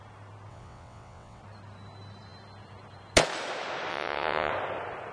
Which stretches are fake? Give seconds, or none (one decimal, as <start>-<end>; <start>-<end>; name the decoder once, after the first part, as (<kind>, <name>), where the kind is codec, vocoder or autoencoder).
0.5-1.4 (vocoder, WaveNeXt); 3.9-4.5